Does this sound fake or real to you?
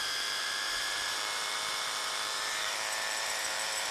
fake